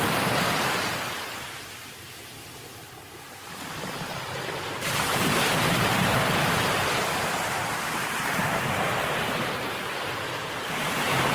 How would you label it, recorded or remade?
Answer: remade